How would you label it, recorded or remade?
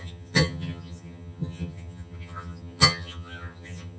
remade